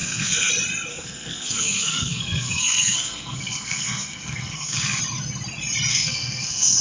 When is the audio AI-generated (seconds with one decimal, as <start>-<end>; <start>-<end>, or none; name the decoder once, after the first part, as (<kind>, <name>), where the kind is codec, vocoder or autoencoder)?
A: 0.0-0.5 (codec, SNAC); 0.9-5.0; 5.9-6.8